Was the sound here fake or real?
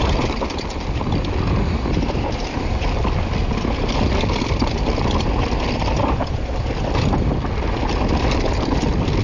real